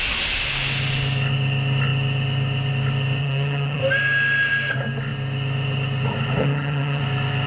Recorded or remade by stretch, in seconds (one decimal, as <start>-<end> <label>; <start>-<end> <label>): 0.0-3.2 recorded; 3.2-3.8 remade; 3.8-6.4 recorded; 6.4-7.0 remade; 7.0-7.5 recorded